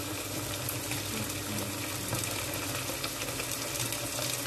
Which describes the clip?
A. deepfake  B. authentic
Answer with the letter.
B